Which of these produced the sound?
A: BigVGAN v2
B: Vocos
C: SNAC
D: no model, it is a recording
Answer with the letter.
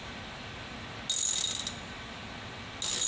D